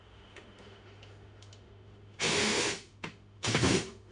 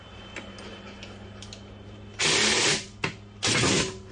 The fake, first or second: first